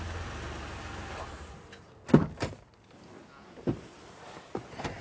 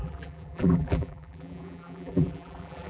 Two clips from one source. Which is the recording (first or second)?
first